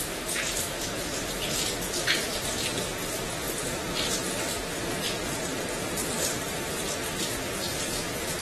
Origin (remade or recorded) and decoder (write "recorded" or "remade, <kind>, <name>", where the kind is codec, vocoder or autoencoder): recorded